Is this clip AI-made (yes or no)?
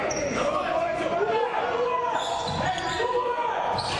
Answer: yes